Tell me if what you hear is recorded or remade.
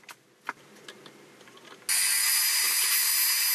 recorded